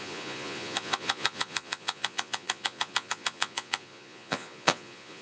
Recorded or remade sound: remade